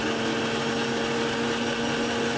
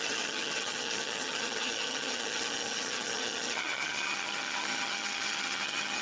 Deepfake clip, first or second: second